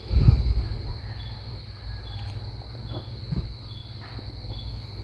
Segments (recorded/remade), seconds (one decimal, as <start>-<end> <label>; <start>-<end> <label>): 0.0-0.7 remade; 0.7-3.2 recorded; 3.2-3.8 remade; 3.8-4.5 recorded; 4.5-5.0 remade